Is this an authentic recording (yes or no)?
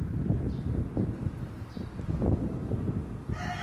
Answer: yes